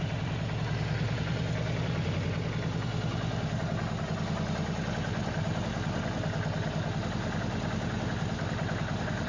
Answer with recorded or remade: recorded